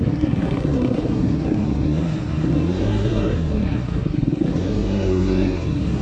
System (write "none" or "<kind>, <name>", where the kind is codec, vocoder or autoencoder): codec, SNAC